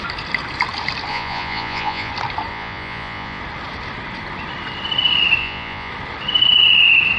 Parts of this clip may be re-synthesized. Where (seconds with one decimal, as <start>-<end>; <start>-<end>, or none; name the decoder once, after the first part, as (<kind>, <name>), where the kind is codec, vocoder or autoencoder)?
1.1-2.1 (vocoder, Vocos); 2.5-3.4; 5.4-5.9